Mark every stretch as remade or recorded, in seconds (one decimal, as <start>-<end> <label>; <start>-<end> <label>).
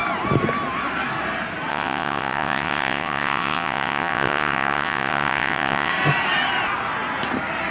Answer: 0.0-1.7 recorded; 1.7-5.9 remade; 5.9-7.7 recorded